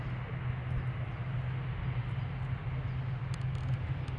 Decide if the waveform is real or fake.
real